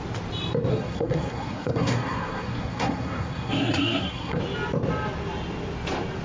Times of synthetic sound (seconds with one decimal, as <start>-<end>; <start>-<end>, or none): 0.7-4.4